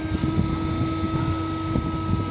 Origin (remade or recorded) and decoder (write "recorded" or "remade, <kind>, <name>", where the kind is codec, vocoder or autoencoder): recorded